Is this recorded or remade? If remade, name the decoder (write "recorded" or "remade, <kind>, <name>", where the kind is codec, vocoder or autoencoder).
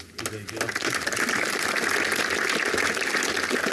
recorded